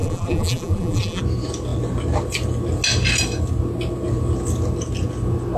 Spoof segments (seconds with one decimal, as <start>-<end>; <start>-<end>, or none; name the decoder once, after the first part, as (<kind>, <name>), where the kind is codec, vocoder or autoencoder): 0.0-1.2 (vocoder, BigVGAN v2)